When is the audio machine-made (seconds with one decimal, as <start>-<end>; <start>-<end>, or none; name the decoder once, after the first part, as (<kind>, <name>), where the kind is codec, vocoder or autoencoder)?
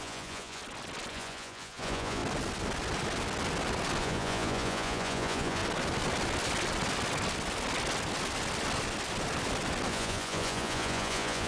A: 0.0-0.6 (vocoder, Vocos); 1.1-2.2; 4.0-5.6; 9.9-11.5